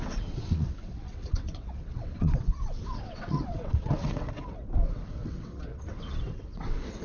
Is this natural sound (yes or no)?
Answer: no